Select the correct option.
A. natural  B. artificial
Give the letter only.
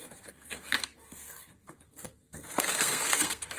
B